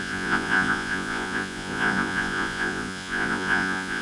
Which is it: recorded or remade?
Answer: remade